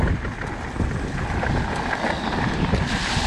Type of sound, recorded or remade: recorded